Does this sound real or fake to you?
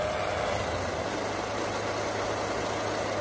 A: real